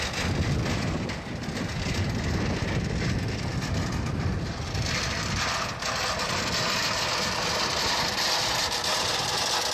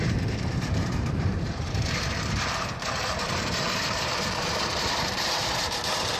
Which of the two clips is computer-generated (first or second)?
second